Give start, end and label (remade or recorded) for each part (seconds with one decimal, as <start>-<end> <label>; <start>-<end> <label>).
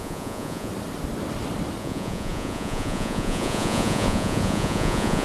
0.0-0.7 remade; 0.7-1.8 recorded; 1.8-5.2 remade